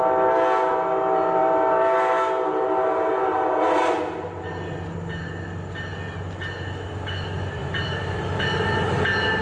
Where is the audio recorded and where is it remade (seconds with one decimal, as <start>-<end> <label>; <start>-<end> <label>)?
0.0-7.6 recorded; 7.6-8.4 remade; 8.4-9.4 recorded